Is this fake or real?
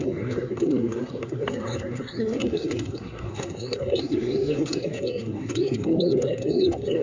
fake